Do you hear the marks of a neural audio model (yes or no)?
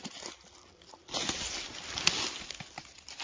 no